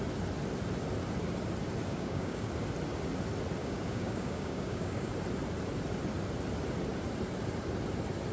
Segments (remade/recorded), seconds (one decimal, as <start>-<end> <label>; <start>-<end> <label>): 0.0-1.9 recorded; 1.9-2.5 remade; 2.5-3.6 recorded; 3.6-5.1 remade; 5.1-8.3 recorded